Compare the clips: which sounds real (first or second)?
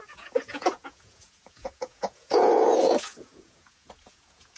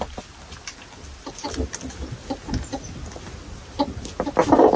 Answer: second